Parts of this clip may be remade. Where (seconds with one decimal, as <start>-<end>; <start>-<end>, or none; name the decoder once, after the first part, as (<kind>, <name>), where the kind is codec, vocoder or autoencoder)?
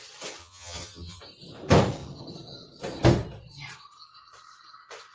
0.4-1.2 (vocoder, HiFi-GAN)